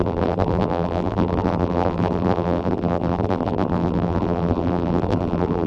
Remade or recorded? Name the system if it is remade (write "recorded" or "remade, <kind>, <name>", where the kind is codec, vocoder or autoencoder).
remade, vocoder, BigVGAN v2